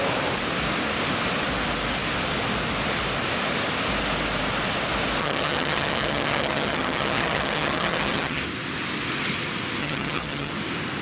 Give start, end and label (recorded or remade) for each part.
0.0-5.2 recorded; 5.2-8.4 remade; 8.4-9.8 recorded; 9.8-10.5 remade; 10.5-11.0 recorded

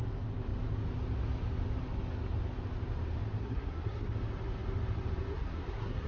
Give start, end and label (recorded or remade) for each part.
0.0-3.4 recorded; 3.4-4.1 remade; 4.1-5.3 recorded; 5.3-6.1 remade

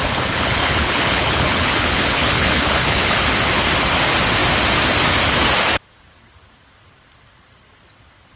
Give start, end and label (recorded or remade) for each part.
0.0-3.2 remade; 3.2-8.4 recorded

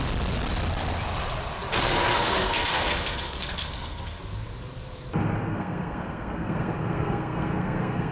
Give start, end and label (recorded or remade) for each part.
0.0-1.7 recorded; 1.7-4.2 remade; 4.2-5.5 recorded; 5.5-8.1 remade

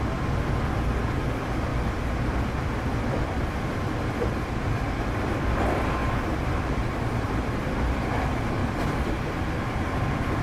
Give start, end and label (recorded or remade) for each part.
0.0-1.7 recorded; 1.7-4.7 remade; 4.7-6.0 recorded; 6.0-7.7 remade; 7.7-10.4 recorded

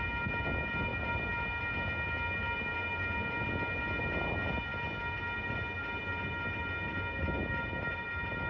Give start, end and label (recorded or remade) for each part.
0.0-8.5 recorded

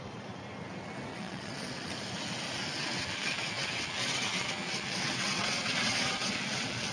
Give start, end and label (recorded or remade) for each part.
0.0-1.1 recorded; 1.1-1.9 remade; 1.9-2.8 recorded; 2.8-6.9 remade